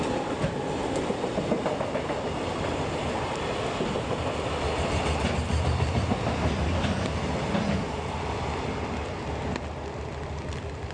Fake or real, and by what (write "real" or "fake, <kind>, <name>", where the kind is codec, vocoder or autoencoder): real